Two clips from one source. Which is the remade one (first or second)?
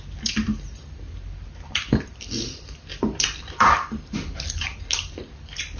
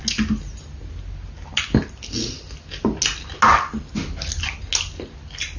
first